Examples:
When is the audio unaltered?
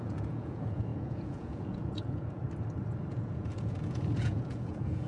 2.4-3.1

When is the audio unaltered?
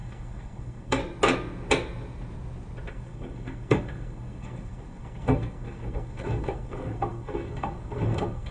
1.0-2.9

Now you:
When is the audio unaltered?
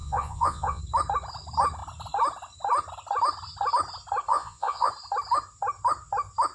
0.8-4.3; 4.9-6.5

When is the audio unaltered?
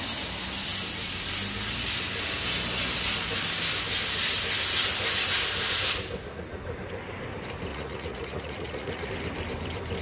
0.0-7.7; 9.1-10.0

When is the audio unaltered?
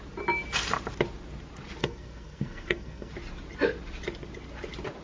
0.0-1.8; 3.1-5.0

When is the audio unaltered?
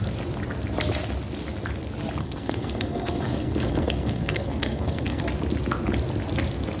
0.0-2.2; 5.2-6.8